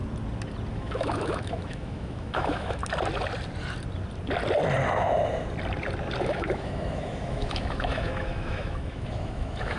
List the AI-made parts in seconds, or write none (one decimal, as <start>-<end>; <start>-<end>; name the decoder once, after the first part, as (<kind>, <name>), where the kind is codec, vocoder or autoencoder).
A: 0.7-2.8 (autoencoder, DAC-VAE); 6.2-9.8